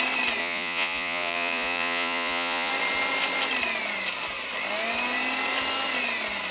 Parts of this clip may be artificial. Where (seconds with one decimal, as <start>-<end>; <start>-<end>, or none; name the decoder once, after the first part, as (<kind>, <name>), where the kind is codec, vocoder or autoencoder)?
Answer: 0.4-2.7 (vocoder, Vocos)